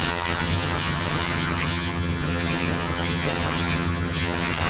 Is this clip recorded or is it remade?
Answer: remade